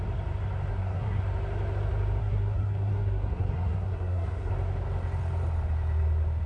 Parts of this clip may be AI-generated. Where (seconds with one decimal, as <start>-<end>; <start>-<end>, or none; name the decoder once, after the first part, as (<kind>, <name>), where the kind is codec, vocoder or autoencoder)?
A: 0.7-1.2 (codec, SNAC); 2.2-4.5